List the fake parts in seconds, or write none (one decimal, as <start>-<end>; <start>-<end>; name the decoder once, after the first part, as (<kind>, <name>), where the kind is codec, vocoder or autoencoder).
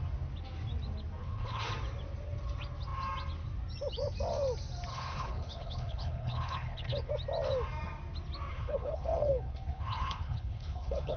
1.2-1.7 (codec, HILCodec); 4.9-7.1; 8.5-11.2